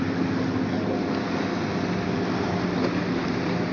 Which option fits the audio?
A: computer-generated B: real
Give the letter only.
B